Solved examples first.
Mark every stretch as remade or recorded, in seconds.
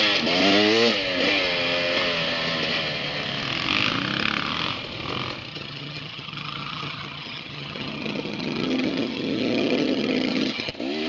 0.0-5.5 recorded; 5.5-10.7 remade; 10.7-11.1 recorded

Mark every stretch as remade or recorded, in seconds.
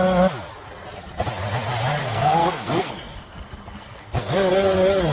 0.0-2.0 recorded; 2.0-4.5 remade; 4.5-5.1 recorded